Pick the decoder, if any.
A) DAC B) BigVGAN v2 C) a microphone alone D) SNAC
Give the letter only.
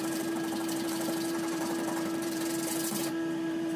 B